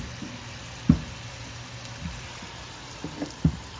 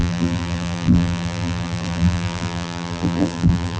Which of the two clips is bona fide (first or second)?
first